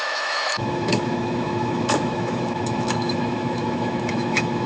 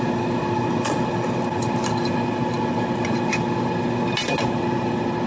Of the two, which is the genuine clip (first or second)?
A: second